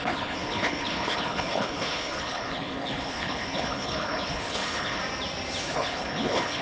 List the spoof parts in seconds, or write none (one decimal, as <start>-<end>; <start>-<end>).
0.0-5.0; 5.6-6.6